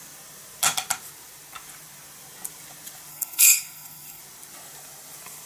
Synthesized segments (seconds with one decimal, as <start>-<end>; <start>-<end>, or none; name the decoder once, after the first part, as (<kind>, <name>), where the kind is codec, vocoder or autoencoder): 3.1-4.2 (codec, SNAC)